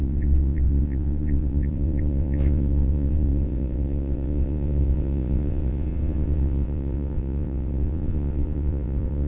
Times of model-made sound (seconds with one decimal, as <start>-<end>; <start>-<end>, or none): 0.0-9.3